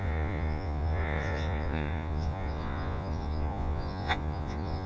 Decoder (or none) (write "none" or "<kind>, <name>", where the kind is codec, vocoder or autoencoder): vocoder, Vocos